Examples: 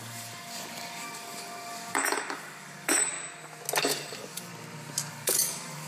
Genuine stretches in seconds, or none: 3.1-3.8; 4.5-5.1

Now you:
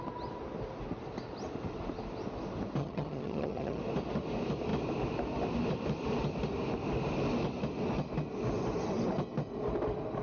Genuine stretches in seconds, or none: 0.0-2.8; 3.8-10.2

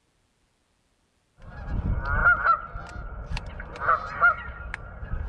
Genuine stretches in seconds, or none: 0.0-5.3

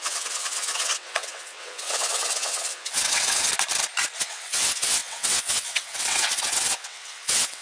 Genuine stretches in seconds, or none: 3.5-4.2